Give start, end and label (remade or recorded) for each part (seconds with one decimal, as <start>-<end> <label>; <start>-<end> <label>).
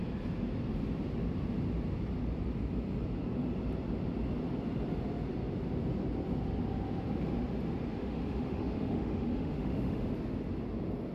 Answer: 0.0-8.0 recorded; 8.0-10.1 remade; 10.1-11.1 recorded